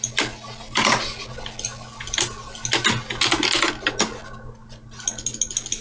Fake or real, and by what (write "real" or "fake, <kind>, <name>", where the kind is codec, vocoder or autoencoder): real